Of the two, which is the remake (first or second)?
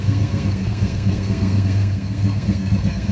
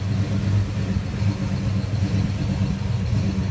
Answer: first